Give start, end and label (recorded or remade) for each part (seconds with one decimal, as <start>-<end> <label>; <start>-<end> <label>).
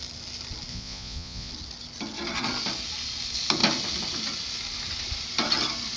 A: 0.0-0.7 recorded; 0.7-1.5 remade; 1.5-6.0 recorded